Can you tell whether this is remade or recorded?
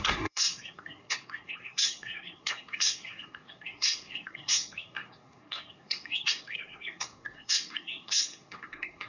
remade